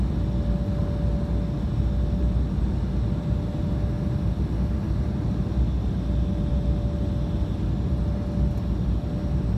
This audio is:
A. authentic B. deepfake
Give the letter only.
A